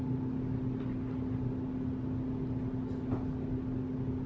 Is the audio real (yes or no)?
yes